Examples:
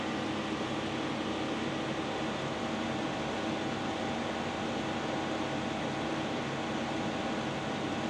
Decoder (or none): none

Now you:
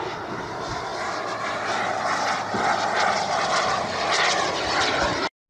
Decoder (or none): none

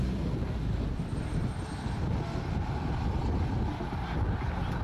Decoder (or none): none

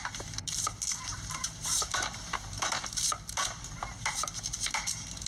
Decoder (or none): vocoder, BigVGAN v2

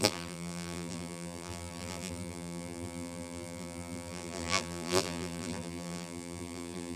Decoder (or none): vocoder, BigVGAN v2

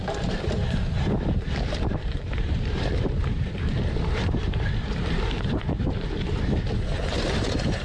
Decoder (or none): vocoder, BigVGAN v2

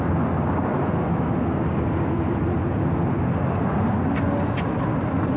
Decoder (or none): none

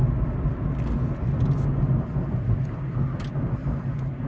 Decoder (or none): none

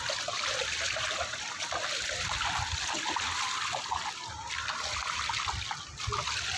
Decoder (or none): none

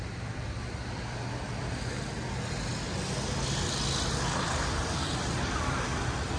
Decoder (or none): none